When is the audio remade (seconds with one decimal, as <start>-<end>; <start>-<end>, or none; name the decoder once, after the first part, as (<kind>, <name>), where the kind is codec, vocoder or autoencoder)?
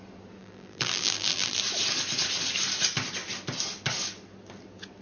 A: 0.4-1.6 (vocoder, BigVGAN v2)